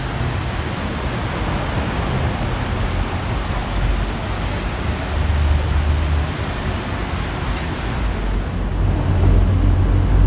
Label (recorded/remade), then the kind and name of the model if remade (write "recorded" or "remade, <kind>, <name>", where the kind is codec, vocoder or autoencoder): recorded